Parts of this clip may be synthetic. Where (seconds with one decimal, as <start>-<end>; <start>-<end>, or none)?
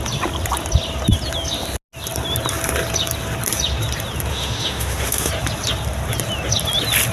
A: 4.3-5.3